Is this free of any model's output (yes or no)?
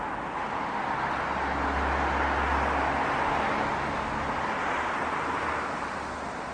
yes